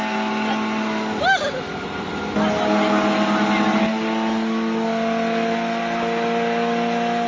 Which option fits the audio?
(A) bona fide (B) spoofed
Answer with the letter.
A